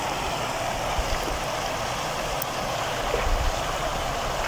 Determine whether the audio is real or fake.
real